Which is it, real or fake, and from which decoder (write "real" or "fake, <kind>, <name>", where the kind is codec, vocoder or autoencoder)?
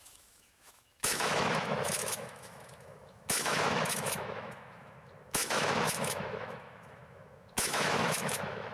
fake, autoencoder, DAC-VAE